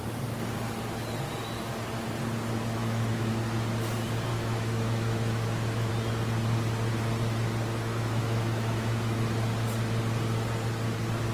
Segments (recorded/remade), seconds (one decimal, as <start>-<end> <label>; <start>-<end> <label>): 0.0-2.8 recorded; 2.8-3.3 remade; 3.3-4.3 recorded; 4.3-5.9 remade; 5.9-7.9 recorded; 7.9-9.2 remade; 9.2-11.3 recorded